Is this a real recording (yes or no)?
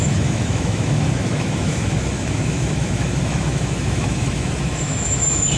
no